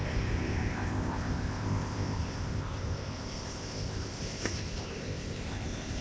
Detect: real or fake fake